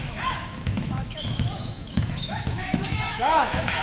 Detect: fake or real fake